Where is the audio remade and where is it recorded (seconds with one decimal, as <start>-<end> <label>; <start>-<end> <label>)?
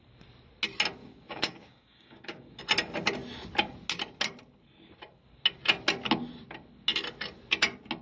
0.0-1.0 recorded; 1.0-2.6 remade; 2.6-8.0 recorded